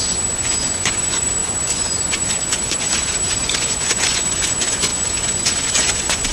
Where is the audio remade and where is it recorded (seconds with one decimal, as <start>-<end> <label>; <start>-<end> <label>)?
0.0-6.3 remade

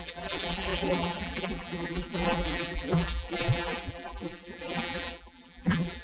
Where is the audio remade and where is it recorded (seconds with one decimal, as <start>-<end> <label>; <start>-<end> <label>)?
0.0-6.0 remade

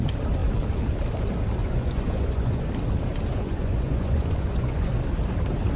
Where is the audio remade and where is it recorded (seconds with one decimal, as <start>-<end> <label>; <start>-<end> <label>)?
0.0-1.6 recorded; 1.6-2.7 remade; 2.7-3.3 recorded; 3.3-4.9 remade; 4.9-5.8 recorded

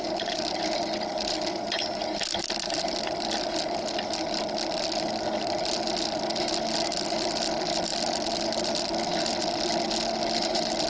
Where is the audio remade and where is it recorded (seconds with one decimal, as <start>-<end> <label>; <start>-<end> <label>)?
0.0-10.9 recorded

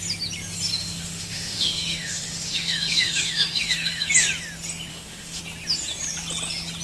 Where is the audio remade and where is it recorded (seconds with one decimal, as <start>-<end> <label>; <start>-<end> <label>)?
0.0-0.8 recorded; 0.8-4.1 remade; 4.1-4.9 recorded; 4.9-5.4 remade; 5.4-6.8 recorded

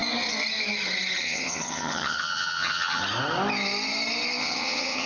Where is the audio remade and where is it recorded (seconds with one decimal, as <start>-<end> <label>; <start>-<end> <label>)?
0.0-1.2 recorded; 1.2-3.0 remade; 3.0-4.4 recorded; 4.4-5.1 remade

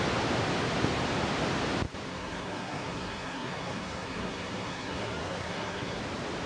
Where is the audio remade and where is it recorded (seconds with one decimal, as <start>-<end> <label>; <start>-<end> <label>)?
0.0-2.1 recorded; 2.1-6.0 remade; 6.0-6.5 recorded